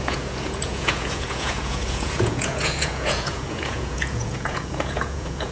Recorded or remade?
remade